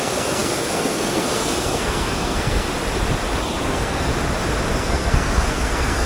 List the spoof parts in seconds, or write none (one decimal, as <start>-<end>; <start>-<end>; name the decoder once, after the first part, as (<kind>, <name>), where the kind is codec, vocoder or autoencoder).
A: 0.0-2.7 (codec, SNAC); 3.6-4.1; 4.7-6.1